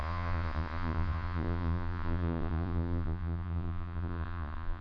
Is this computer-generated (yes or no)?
yes